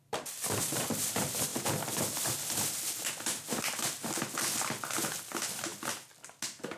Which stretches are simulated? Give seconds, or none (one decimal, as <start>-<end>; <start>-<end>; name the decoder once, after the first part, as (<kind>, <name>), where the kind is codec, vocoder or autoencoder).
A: 0.0-1.5 (vocoder, BigVGAN v2); 3.6-5.7